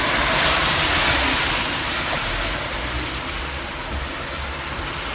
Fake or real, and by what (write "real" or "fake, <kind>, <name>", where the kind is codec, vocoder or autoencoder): real